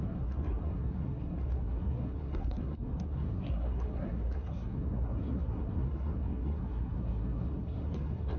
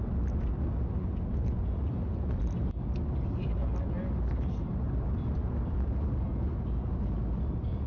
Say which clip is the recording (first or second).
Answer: second